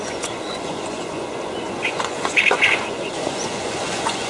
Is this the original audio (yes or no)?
no